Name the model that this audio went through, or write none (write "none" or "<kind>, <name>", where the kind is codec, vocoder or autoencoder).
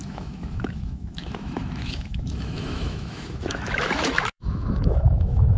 autoencoder, DAC-VAE